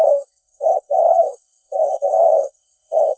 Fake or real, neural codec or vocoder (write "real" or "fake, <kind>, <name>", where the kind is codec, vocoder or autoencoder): fake, codec, SNAC